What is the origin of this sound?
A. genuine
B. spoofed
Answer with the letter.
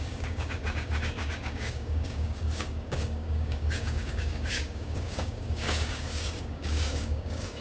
B